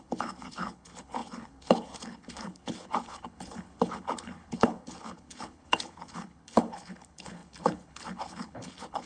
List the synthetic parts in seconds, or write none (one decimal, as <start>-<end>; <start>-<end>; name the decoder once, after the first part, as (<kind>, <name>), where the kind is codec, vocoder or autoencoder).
0.0-9.1 (codec, HILCodec)